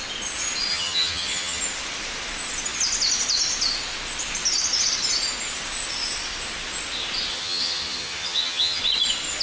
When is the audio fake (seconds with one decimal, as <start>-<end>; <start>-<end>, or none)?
0.7-1.6; 7.3-8.8